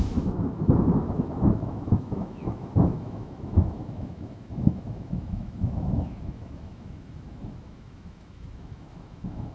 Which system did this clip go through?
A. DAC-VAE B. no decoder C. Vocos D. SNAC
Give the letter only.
A